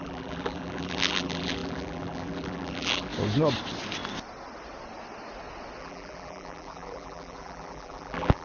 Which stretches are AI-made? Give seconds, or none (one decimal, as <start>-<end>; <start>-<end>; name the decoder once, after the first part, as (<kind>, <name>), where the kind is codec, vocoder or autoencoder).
0.0-3.1 (vocoder, BigVGAN v2); 5.8-8.4